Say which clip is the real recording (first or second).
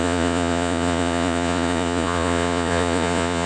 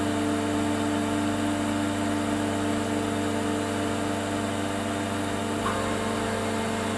second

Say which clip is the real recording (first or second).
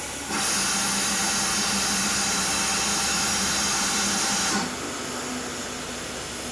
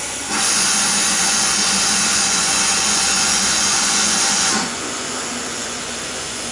first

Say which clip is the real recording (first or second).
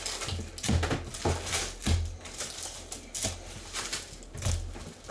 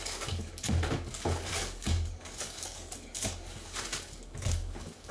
first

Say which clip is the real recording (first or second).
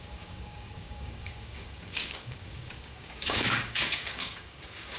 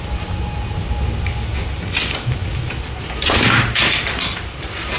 second